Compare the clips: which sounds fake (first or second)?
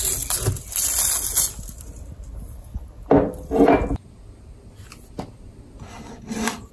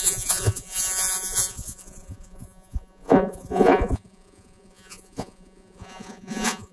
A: second